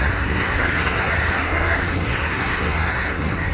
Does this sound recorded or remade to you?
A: remade